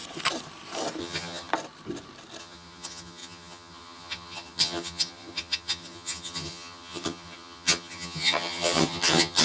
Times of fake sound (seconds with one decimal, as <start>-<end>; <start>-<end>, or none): 1.0-1.5; 2.4-9.4